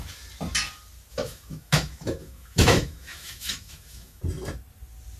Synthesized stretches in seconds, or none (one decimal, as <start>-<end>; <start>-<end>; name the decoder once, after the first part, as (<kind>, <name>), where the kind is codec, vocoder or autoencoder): 1.1-4.2 (autoencoder, DAC-VAE)